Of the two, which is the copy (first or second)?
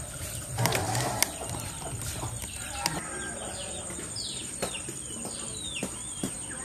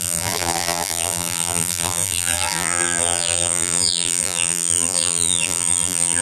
second